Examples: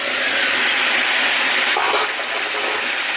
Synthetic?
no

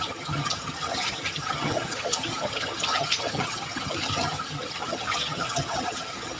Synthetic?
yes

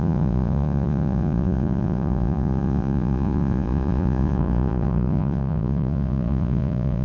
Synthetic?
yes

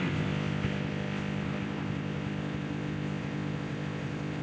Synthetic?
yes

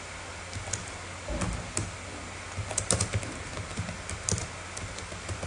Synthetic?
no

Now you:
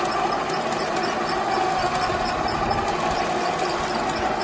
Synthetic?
no